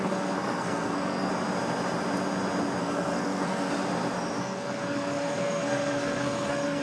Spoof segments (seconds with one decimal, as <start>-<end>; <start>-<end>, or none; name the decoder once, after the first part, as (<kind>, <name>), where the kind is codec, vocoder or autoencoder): 0.0-1.3 (codec, SNAC); 2.8-3.7; 4.4-6.8